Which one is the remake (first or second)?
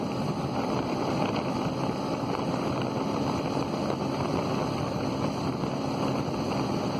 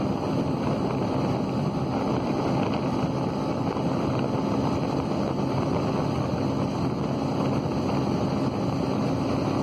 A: first